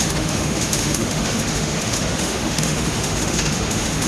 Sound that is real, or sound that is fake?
fake